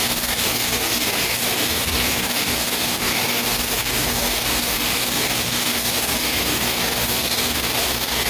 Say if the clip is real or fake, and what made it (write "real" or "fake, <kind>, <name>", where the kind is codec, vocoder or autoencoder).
fake, codec, DAC